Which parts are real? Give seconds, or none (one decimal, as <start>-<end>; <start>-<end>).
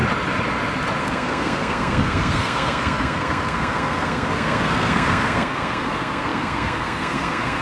0.0-1.0